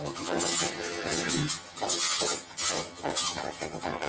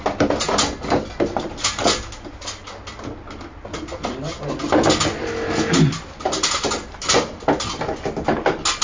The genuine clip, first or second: second